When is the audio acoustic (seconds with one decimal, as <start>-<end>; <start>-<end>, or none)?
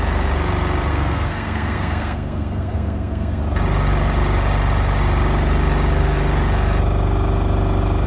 0.0-0.9; 3.4-8.1